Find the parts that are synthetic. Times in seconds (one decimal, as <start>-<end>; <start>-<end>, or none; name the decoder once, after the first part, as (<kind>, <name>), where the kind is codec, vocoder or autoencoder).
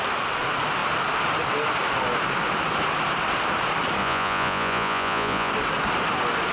4.0-5.5 (vocoder, Vocos)